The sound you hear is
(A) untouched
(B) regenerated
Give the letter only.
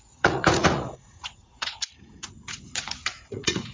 B